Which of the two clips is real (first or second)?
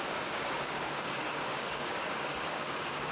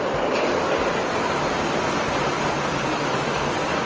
second